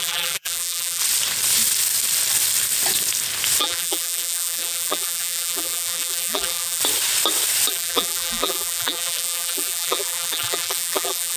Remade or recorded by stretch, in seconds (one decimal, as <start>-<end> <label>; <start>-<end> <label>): 0.0-1.0 remade; 1.0-3.6 recorded; 3.6-6.8 remade; 6.8-7.7 recorded; 7.7-11.4 remade